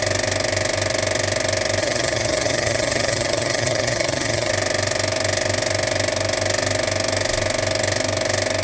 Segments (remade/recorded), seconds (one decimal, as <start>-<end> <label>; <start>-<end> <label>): 0.0-1.8 recorded; 1.8-4.5 remade; 4.5-8.6 recorded